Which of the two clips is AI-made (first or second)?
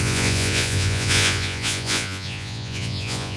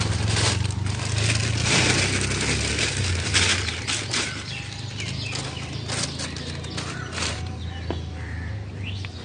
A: first